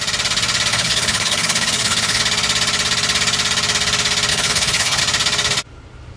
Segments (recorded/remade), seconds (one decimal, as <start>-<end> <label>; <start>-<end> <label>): 0.0-0.7 recorded; 0.7-2.2 remade; 2.2-4.3 recorded; 4.3-5.0 remade; 5.0-6.2 recorded